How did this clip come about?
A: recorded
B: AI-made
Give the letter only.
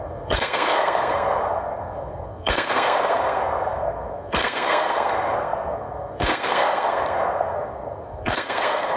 B